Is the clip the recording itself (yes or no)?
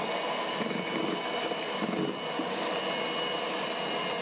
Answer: yes